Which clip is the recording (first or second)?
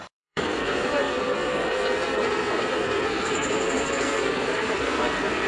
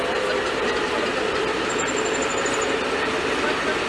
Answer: second